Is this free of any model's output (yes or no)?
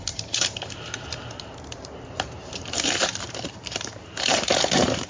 no